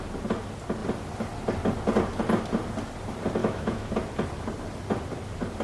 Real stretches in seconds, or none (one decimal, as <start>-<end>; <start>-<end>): 0.0-3.4; 3.9-5.6